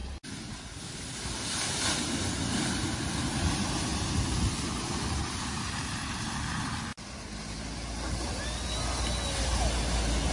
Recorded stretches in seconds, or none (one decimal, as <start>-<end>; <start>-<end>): 0.0-10.3